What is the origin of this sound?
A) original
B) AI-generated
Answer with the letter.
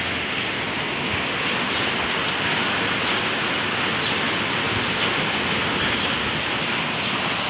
A